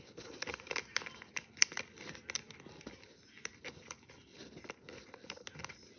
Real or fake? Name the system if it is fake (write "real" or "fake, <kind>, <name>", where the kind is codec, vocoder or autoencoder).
real